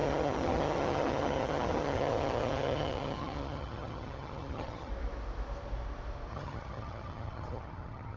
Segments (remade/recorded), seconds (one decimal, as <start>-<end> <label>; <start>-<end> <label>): 0.0-4.9 remade; 4.9-6.3 recorded; 6.3-8.2 remade